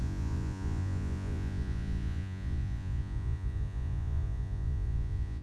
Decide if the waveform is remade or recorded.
remade